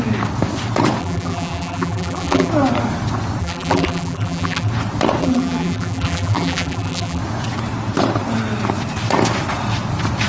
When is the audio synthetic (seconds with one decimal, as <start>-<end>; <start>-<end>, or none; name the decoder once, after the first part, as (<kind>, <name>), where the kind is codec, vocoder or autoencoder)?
1.0-2.5 (vocoder, BigVGAN v2); 3.4-4.7; 5.2-7.2